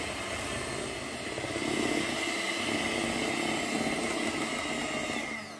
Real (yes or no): yes